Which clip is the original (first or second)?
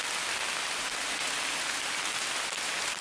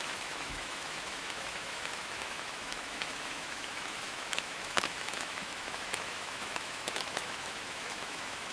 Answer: first